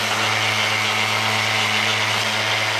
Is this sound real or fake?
real